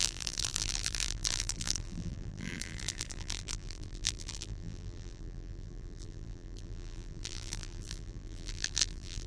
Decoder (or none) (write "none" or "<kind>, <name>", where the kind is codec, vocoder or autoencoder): vocoder, BigVGAN v2